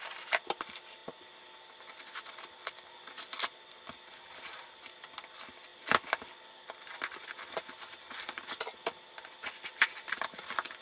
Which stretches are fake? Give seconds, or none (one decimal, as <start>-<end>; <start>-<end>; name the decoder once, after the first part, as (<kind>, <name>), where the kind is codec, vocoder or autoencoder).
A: none

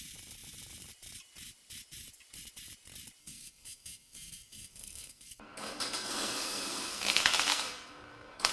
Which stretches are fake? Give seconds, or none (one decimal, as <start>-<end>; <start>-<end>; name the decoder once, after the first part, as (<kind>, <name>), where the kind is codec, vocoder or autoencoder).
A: 3.2-8.5 (codec, SNAC)